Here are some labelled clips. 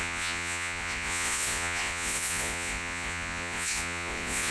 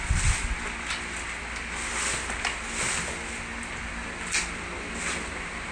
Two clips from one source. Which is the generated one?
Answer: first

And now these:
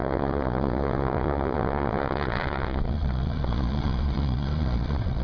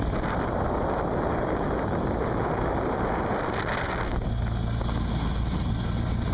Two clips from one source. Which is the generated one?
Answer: first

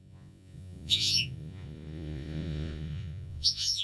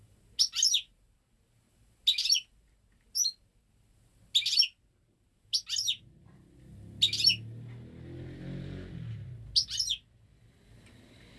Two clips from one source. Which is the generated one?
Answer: first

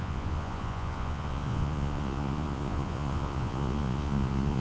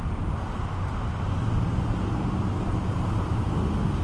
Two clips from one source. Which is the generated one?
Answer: first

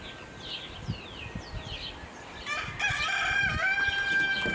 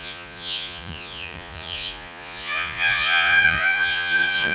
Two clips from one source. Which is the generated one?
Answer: second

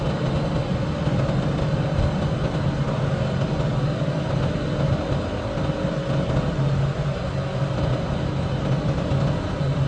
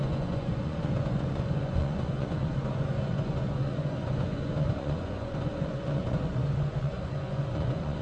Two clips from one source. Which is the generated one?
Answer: second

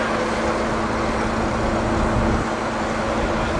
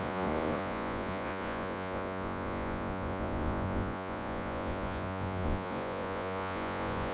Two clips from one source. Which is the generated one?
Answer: second